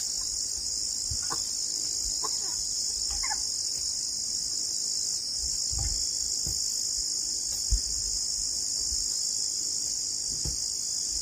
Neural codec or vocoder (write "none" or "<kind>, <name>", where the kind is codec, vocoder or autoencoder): none